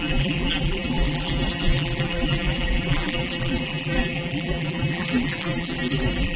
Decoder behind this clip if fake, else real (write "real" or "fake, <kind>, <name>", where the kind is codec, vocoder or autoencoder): fake, vocoder, BigVGAN v2